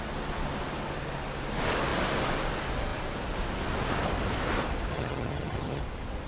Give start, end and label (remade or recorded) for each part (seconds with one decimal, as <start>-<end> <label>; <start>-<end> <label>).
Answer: 0.0-4.9 recorded; 4.9-5.8 remade; 5.8-6.3 recorded